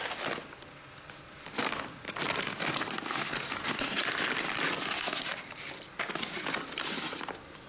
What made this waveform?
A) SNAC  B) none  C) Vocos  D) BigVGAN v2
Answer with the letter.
D